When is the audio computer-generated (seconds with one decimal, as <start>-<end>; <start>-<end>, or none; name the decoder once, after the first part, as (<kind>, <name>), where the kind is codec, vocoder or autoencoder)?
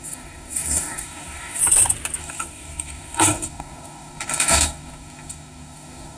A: 0.0-1.6 (codec, DAC); 2.2-6.2